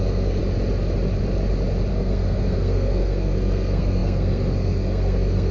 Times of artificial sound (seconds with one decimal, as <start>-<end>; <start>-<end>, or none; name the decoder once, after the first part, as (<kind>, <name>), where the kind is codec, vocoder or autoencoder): 0.0-0.4 (codec, SNAC); 1.9-5.5